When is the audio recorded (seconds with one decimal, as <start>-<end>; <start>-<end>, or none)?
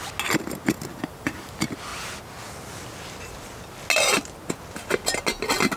0.0-0.9; 1.5-5.8